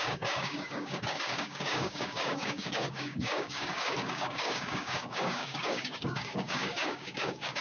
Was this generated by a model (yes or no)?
yes